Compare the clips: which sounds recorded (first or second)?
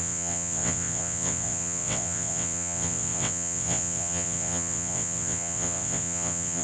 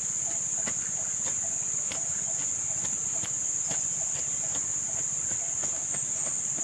second